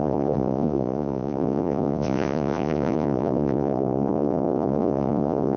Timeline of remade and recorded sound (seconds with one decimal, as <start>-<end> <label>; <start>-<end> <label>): 0.0-5.6 remade